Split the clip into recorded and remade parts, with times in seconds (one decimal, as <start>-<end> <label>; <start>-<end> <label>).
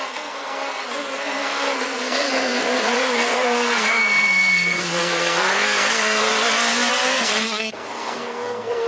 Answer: 0.0-6.3 remade; 6.3-6.9 recorded; 6.9-8.9 remade